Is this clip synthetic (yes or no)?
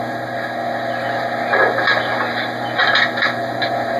no